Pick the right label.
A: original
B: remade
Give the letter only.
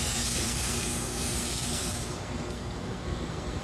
B